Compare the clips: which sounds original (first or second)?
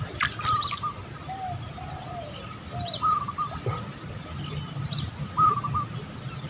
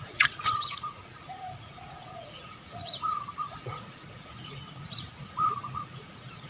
first